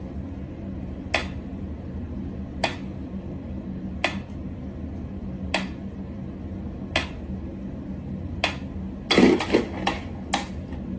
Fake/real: real